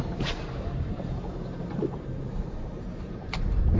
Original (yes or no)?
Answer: no